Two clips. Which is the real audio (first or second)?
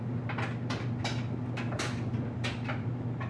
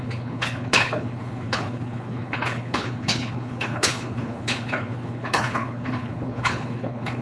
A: first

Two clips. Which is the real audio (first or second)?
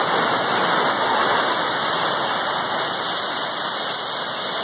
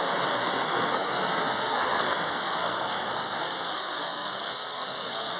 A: first